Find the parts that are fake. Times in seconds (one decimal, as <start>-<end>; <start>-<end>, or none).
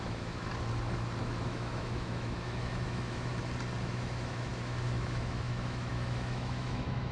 0.0-0.5; 1.2-3.3; 3.8-7.1